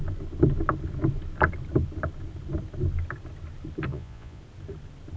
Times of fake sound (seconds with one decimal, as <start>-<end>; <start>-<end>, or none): 3.9-4.4